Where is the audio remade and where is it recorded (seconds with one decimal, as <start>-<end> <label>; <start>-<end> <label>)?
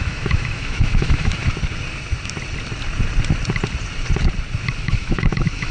0.0-1.4 remade; 1.4-4.8 recorded; 4.8-5.7 remade